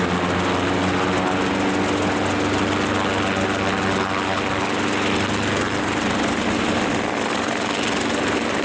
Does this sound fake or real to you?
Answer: real